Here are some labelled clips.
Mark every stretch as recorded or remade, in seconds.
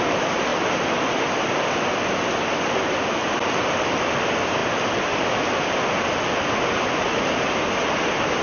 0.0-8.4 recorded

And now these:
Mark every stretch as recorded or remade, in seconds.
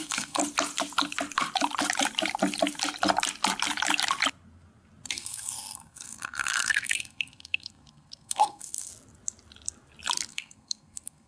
0.0-0.4 remade; 0.4-5.1 recorded; 5.1-8.9 remade; 8.9-10.3 recorded; 10.3-11.3 remade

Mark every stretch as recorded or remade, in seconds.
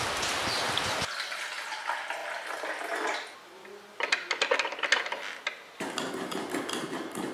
0.0-7.3 recorded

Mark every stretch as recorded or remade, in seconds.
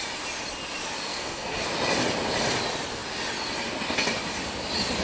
0.0-1.1 recorded; 1.1-1.7 remade; 1.7-5.0 recorded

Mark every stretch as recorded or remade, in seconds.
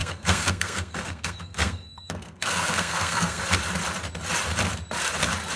0.0-3.4 remade; 3.4-5.6 recorded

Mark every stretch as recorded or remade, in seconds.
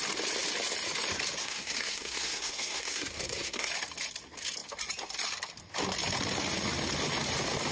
0.0-1.4 recorded; 1.4-3.7 remade; 3.7-7.7 recorded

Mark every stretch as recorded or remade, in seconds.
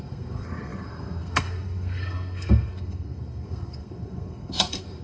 0.0-5.0 remade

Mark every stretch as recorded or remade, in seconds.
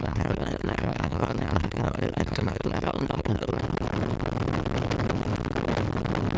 0.0-3.6 remade; 3.6-6.4 recorded